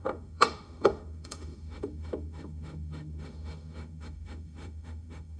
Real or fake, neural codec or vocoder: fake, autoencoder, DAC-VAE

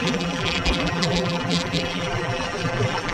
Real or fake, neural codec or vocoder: fake, vocoder, BigVGAN v2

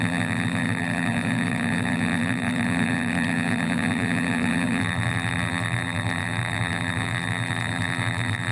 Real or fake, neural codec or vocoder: fake, vocoder, BigVGAN v2